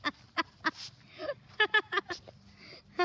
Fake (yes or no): no